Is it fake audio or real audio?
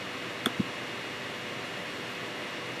real